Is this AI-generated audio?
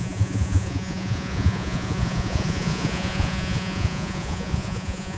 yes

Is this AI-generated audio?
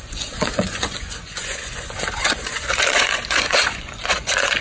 yes